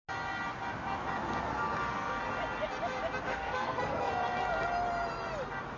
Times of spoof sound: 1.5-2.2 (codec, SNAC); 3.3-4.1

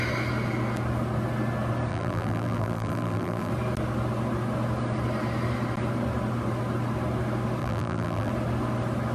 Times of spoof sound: 1.9-3.5 (vocoder, BigVGAN v2); 7.6-8.3

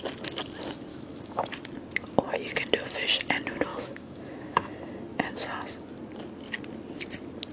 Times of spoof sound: 0.9-1.5 (autoencoder, DAC-VAE); 3.7-4.7

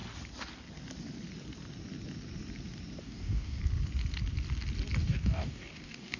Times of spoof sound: 3.0-3.6 (codec, DAC); 5.0-6.2

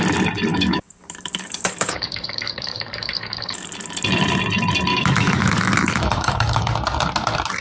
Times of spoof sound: 0.5-3.7 (codec, DAC); 4.9-6.7

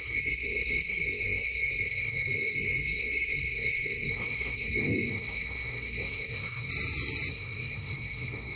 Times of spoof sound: 0.0-6.7 (codec, SNAC); 7.3-8.5

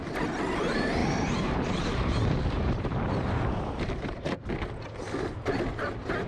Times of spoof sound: 1.0-4.5 (vocoder, BigVGAN v2); 5.4-6.3